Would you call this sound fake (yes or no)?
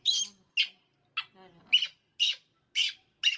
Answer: no